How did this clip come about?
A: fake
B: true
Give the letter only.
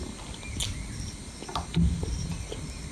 B